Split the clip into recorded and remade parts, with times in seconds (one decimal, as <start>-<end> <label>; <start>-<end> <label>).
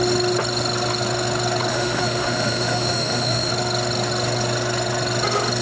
0.0-1.7 recorded; 1.7-3.5 remade; 3.5-5.6 recorded